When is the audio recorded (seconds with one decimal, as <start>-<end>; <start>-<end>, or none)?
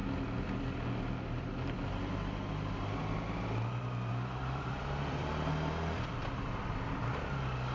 0.0-4.1